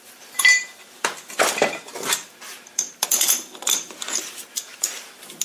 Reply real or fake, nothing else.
fake